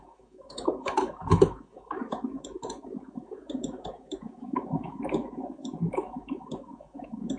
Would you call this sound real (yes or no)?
no